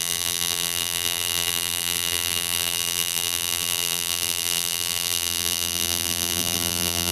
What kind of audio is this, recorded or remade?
remade